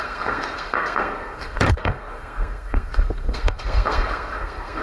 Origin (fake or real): fake